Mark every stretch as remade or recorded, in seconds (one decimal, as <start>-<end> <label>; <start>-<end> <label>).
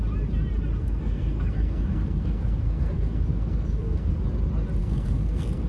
0.0-0.8 recorded; 0.8-4.1 remade; 4.1-4.8 recorded; 4.8-5.7 remade